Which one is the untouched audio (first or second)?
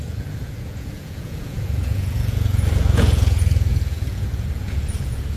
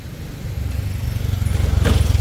second